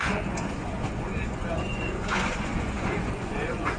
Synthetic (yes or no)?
yes